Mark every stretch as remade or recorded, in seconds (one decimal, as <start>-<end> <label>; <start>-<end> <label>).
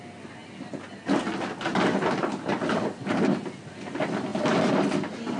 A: 0.0-5.4 recorded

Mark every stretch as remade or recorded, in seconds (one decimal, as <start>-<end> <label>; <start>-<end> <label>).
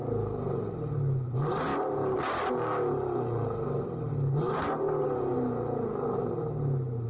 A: 0.0-7.1 recorded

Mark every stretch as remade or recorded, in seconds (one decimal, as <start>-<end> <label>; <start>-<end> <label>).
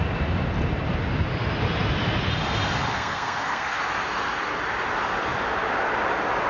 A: 0.0-2.9 recorded; 2.9-3.8 remade; 3.8-6.5 recorded